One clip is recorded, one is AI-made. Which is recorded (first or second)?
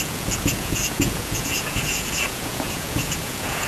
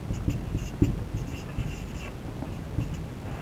second